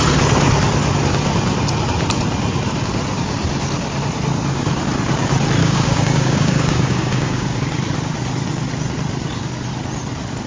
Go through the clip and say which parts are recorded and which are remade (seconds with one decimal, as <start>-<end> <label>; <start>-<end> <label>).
0.0-5.6 recorded; 5.6-7.6 remade; 7.6-10.5 recorded